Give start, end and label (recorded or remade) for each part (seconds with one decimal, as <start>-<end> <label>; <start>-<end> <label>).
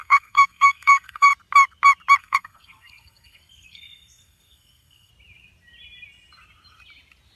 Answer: 0.0-1.3 remade; 1.3-2.2 recorded; 2.2-5.1 remade; 5.1-7.4 recorded